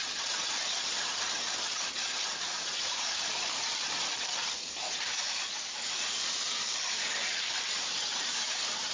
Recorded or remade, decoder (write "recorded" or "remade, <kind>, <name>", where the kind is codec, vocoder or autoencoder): remade, vocoder, BigVGAN v2